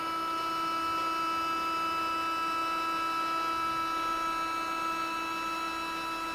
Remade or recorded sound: recorded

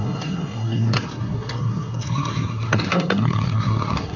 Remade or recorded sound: remade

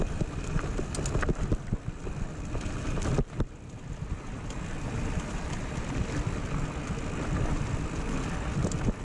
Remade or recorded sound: recorded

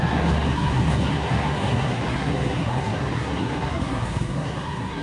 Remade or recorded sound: remade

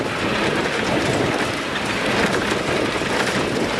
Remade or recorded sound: recorded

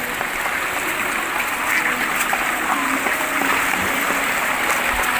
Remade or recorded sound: recorded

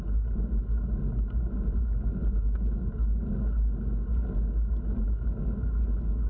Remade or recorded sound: recorded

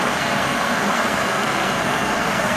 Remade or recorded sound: remade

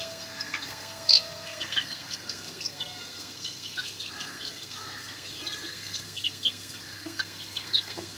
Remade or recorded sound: remade